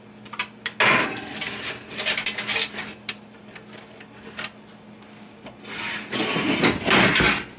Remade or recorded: recorded